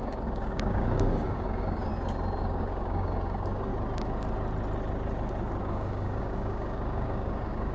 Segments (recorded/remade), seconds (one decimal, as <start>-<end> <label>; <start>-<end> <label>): 0.0-1.9 remade; 1.9-2.4 recorded; 2.4-3.7 remade; 3.7-5.6 recorded; 5.6-7.7 remade